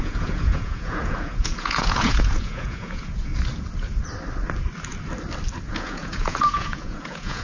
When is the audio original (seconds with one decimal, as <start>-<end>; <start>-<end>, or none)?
3.3-5.7